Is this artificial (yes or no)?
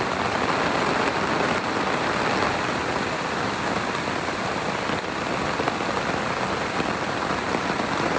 yes